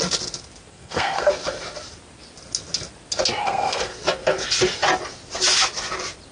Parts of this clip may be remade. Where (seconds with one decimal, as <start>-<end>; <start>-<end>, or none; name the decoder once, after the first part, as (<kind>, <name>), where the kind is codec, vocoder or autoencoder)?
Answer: 0.7-1.3 (codec, SNAC); 3.4-3.9